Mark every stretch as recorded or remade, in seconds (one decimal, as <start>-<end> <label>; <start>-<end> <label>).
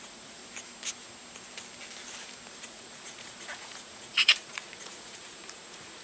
0.0-0.4 remade; 0.4-2.5 recorded; 2.5-6.0 remade